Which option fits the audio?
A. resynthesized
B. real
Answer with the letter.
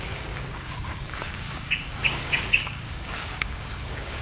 A